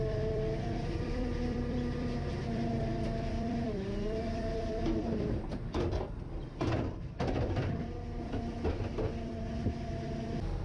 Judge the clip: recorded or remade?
remade